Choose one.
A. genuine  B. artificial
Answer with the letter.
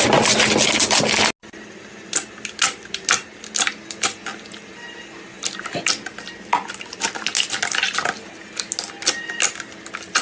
A